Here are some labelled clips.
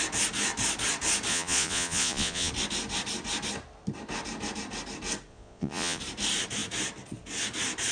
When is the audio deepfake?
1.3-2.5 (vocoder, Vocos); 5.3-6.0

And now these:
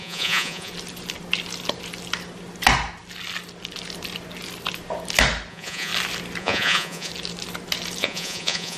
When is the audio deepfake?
0.0-0.7 (vocoder, Vocos); 5.5-5.9; 6.4-7.1; 8.0-8.8

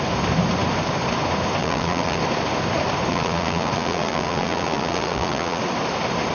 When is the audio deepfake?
1.6-2.2 (vocoder, Vocos); 3.1-5.6

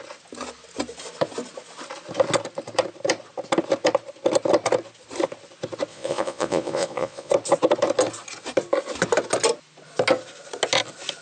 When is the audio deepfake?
5.9-7.3 (vocoder, Vocos)

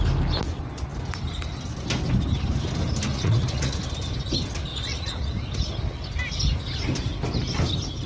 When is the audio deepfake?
3.1-3.8 (vocoder, Vocos); 4.7-5.3